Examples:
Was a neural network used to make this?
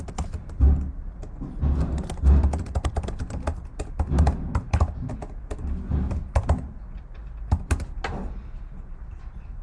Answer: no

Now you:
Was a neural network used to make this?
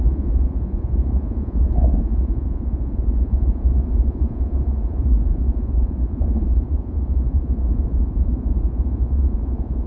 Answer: yes